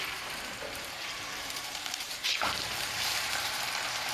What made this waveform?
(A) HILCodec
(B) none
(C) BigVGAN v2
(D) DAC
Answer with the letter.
C